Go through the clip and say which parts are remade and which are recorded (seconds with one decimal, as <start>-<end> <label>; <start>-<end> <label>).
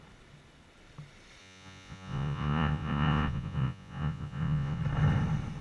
0.0-1.4 recorded; 1.4-4.8 remade; 4.8-5.6 recorded